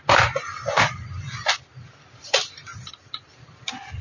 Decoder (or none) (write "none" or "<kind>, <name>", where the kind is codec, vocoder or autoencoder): none